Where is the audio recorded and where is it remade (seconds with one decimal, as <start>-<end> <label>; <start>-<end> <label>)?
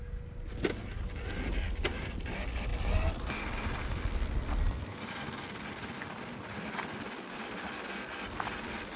0.0-9.0 recorded